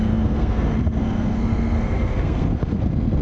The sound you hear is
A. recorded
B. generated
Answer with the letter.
B